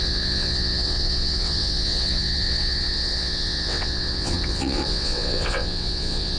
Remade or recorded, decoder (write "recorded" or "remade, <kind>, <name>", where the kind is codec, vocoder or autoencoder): remade, vocoder, WaveNeXt